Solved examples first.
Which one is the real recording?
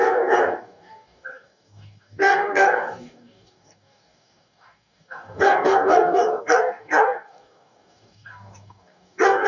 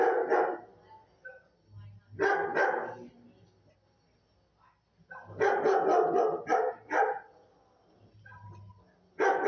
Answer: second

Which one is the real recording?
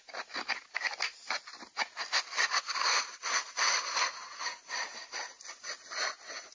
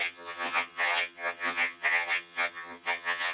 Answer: first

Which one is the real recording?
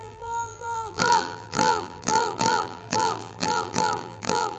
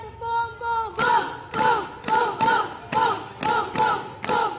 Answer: second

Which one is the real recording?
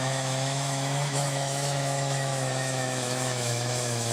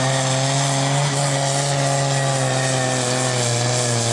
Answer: second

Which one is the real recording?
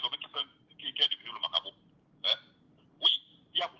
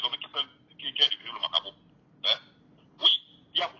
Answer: second